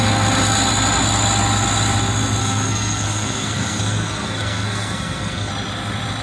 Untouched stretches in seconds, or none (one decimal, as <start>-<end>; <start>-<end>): 0.0-2.4; 5.5-6.2